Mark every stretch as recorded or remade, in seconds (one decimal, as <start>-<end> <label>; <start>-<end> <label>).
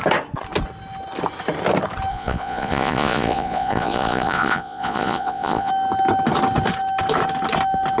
0.0-2.1 recorded; 2.1-5.7 remade; 5.7-8.0 recorded